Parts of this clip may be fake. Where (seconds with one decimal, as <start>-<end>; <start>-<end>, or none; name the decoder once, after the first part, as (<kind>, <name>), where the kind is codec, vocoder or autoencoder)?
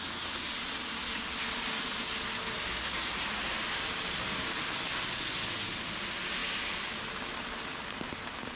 none